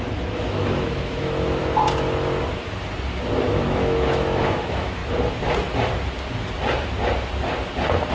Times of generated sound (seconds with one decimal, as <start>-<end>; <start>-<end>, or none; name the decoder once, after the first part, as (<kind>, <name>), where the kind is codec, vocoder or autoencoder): 0.0-1.6 (autoencoder, DAC-VAE); 3.4-5.0